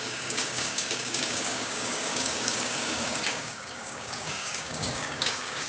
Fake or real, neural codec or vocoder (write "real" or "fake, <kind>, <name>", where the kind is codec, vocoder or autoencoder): fake, codec, DAC